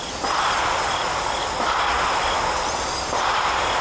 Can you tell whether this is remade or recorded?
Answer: recorded